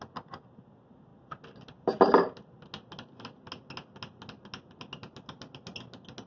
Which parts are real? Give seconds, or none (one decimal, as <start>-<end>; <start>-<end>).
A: 0.0-6.3